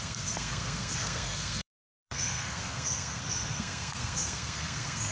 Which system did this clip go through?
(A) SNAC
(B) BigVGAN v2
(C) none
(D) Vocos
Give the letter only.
A